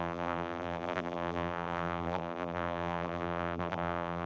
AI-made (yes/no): yes